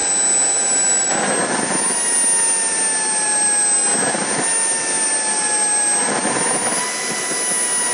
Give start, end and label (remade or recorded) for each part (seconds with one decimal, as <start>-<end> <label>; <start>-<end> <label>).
0.0-7.9 recorded